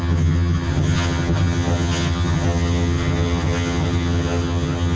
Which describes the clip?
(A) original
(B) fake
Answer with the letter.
B